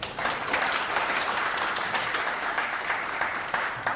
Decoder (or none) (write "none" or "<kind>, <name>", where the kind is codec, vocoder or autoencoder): vocoder, BigVGAN v2